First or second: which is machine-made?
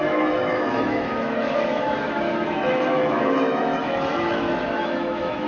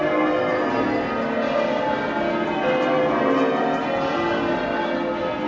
first